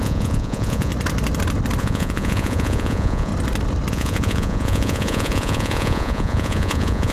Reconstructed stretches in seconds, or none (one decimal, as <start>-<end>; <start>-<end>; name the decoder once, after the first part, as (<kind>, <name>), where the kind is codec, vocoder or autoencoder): 0.0-0.9 (vocoder, Vocos); 1.8-3.3; 3.9-7.1